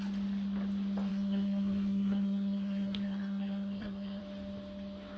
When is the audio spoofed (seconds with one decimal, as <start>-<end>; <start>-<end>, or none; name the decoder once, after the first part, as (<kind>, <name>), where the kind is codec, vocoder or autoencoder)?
1.1-4.2 (codec, SNAC)

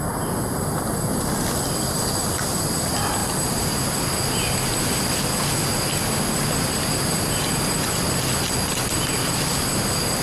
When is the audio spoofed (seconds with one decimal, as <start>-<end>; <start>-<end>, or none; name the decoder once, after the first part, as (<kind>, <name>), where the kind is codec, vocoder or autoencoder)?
3.2-3.8 (vocoder, BigVGAN v2)

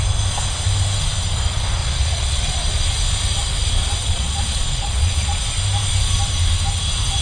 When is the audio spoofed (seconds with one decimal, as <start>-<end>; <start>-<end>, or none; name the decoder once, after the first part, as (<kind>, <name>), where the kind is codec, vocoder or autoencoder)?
1.8-2.5 (vocoder, Vocos); 4.0-5.4

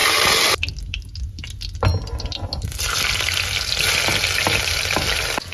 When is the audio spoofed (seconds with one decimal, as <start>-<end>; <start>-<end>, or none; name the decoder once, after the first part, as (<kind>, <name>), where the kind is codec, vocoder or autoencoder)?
none

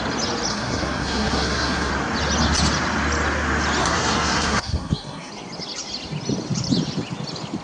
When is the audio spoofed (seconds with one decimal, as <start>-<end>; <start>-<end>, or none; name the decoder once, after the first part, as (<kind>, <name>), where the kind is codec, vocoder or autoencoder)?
0.5-1.9 (codec, SNAC); 3.8-5.3

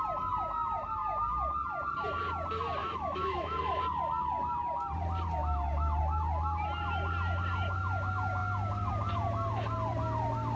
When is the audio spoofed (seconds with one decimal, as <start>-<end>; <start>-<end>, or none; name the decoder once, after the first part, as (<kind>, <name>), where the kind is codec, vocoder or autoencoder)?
2.8-3.8 (autoencoder, DAC-VAE)

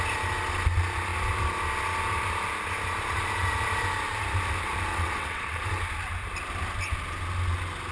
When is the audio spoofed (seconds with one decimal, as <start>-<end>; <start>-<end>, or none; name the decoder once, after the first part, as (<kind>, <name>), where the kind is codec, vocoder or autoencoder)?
4.9-5.7 (vocoder, WaveNeXt)

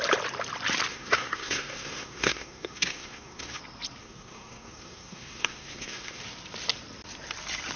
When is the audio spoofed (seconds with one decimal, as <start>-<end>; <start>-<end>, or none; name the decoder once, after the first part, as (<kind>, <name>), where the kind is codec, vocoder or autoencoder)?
0.9-3.6 (codec, SNAC); 4.0-6.2